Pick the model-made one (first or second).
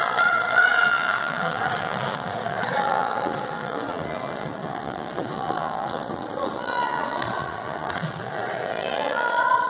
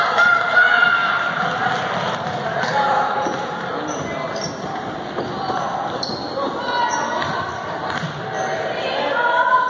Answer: first